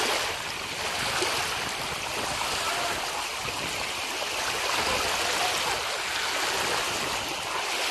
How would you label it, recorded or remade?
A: recorded